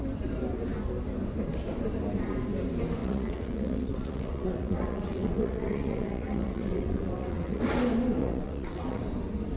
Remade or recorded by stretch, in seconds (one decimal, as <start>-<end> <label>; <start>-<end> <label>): 0.0-3.0 recorded; 3.0-7.6 remade; 7.6-8.2 recorded; 8.2-9.0 remade; 9.0-9.6 recorded